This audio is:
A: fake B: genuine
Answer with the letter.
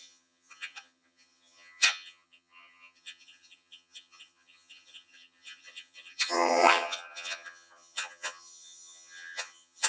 A